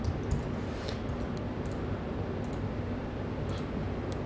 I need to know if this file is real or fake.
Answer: real